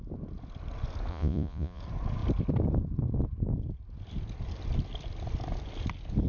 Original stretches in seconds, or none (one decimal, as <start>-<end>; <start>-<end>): 0.0-1.1; 1.8-6.3